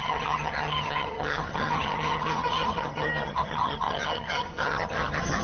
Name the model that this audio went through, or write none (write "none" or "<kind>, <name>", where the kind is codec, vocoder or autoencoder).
vocoder, HiFi-GAN